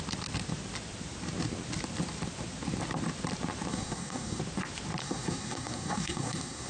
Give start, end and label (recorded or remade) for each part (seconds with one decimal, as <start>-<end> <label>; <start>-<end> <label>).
0.0-3.7 recorded; 3.7-4.4 remade; 4.4-5.0 recorded; 5.0-6.7 remade